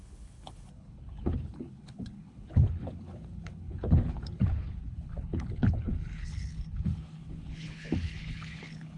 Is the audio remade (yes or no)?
yes